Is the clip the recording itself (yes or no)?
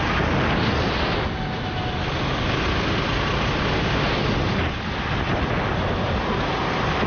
yes